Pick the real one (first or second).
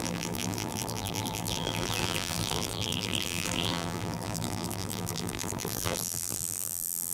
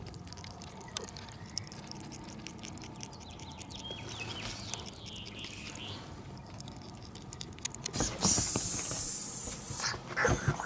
second